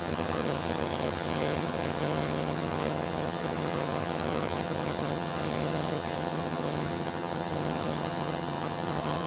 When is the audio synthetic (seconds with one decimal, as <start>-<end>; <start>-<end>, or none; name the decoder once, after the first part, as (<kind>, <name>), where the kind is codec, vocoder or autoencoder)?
0.0-9.3 (vocoder, HiFi-GAN)